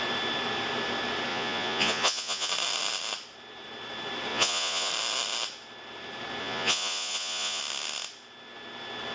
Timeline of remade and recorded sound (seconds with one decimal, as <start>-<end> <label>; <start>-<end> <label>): 0.0-1.3 recorded; 1.3-2.5 remade; 2.5-4.3 recorded; 4.3-4.9 remade; 4.9-6.4 recorded; 6.4-7.6 remade; 7.6-9.1 recorded